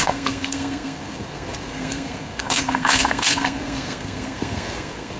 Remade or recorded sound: remade